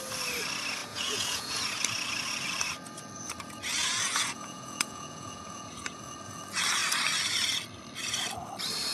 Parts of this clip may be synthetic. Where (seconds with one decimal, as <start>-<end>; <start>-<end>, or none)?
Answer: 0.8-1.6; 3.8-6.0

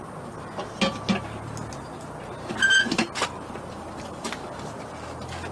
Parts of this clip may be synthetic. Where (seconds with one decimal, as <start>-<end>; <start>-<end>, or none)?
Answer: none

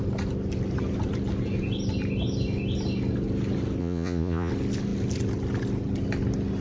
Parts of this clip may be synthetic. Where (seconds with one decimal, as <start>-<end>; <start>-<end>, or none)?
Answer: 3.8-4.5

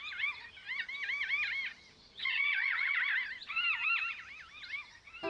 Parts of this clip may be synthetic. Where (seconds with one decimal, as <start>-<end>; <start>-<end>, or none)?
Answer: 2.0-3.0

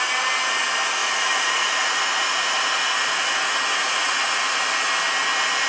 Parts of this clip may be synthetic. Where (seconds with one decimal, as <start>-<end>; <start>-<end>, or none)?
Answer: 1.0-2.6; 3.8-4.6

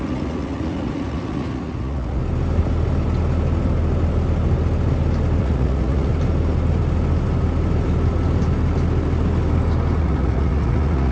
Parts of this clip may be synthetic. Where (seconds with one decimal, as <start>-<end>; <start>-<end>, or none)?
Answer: 0.0-2.2; 5.4-6.1; 10.0-11.1

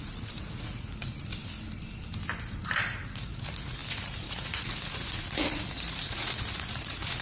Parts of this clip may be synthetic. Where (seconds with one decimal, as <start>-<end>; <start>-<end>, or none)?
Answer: 0.0-1.3; 2.8-7.2